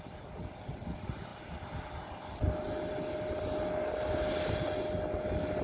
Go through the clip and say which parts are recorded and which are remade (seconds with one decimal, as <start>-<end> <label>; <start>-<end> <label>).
0.0-5.6 recorded